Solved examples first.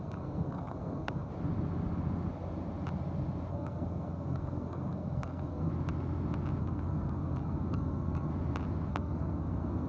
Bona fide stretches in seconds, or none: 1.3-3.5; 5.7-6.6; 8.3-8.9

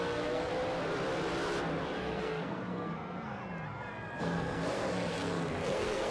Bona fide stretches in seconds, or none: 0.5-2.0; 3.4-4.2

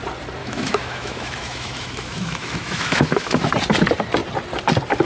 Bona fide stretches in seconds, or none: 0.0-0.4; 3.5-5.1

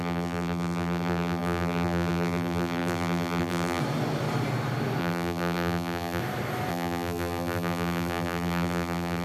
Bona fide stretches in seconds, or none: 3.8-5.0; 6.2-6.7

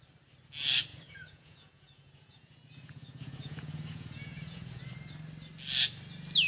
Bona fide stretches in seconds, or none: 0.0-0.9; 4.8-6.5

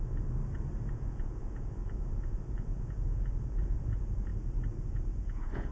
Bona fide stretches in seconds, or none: 0.4-0.9; 4.3-4.9